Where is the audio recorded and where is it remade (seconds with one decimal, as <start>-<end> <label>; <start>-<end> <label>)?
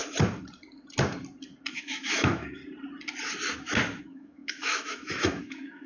0.0-1.7 recorded; 1.7-2.6 remade; 2.6-4.0 recorded; 4.0-5.9 remade